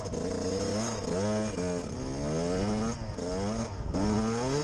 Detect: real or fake real